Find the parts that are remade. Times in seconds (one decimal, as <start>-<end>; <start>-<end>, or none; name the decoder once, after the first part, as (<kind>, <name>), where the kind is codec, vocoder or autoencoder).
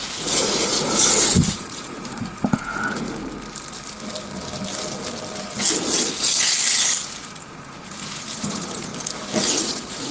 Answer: 0.0-3.2 (vocoder, Vocos); 7.0-8.9; 9.5-10.1